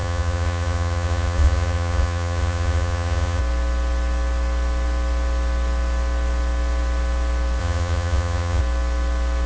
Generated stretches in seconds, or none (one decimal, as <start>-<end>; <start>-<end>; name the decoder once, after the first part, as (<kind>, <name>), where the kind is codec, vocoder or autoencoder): 0.0-3.4 (vocoder, Vocos); 7.6-8.6

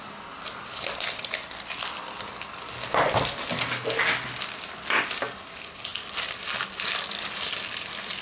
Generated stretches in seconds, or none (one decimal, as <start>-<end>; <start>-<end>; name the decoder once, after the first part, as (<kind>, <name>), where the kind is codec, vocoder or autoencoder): none

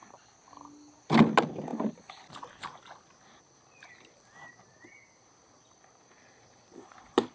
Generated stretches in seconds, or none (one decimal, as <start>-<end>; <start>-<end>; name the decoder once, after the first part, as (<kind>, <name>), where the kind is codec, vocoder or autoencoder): none

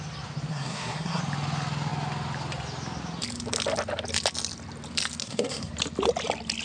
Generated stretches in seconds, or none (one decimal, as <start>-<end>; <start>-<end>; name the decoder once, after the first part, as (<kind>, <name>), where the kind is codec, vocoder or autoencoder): 0.5-1.2 (codec, SNAC); 5.2-5.7

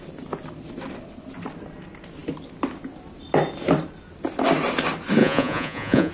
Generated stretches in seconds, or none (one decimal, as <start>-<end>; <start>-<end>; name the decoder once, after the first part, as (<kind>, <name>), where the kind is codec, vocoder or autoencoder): 5.2-6.1 (vocoder, Vocos)

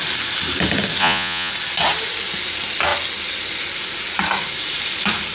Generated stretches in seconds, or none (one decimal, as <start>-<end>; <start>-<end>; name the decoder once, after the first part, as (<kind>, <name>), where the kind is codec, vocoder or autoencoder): 1.0-1.5 (vocoder, Vocos)